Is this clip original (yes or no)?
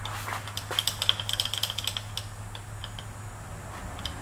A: yes